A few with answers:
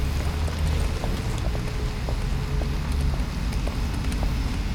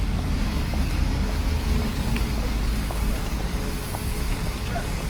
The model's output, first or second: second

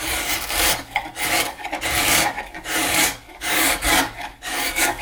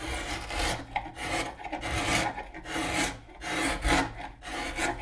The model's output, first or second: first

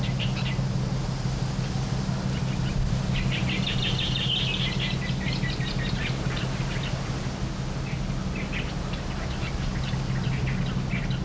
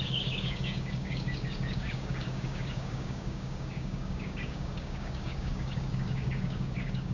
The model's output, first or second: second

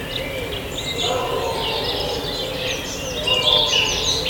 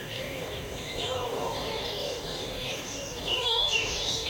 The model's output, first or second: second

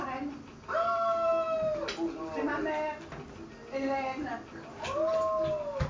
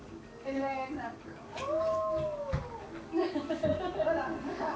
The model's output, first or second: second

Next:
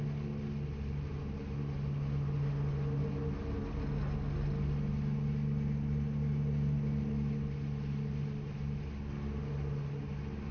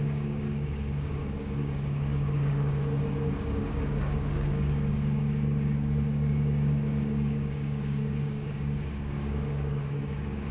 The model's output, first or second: second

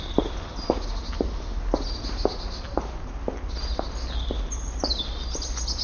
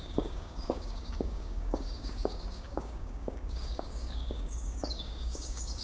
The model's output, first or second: second